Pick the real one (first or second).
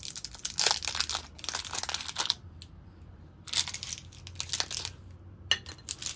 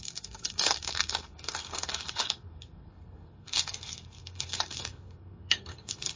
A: first